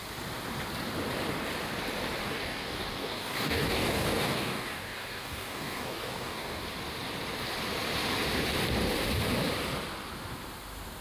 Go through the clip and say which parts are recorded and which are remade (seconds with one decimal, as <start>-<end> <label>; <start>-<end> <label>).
0.0-2.2 recorded; 2.2-6.6 remade; 6.6-11.0 recorded